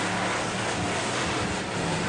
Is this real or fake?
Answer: real